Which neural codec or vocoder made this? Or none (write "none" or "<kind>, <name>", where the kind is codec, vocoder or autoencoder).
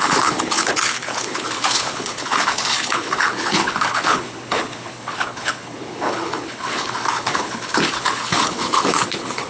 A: codec, HILCodec